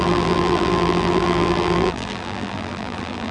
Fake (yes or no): yes